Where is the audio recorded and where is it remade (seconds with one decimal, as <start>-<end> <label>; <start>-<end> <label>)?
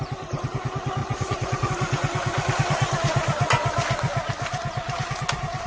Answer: 0.0-1.0 recorded; 1.0-1.7 remade; 1.7-5.7 recorded